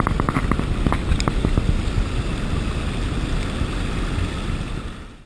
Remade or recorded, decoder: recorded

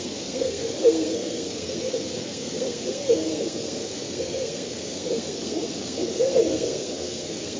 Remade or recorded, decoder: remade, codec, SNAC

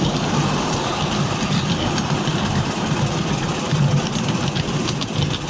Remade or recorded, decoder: recorded